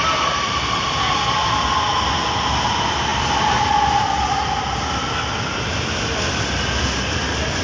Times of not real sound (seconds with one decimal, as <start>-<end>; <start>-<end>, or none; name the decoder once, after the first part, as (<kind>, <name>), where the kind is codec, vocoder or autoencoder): 3.1-4.6 (vocoder, BigVGAN v2); 5.0-6.6